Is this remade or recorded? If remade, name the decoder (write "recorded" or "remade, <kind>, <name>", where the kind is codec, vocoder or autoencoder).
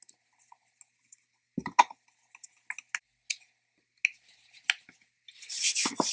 recorded